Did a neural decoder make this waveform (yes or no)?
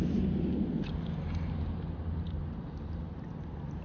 no